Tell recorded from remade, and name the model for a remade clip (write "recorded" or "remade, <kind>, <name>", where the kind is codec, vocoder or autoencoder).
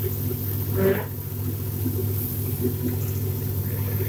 recorded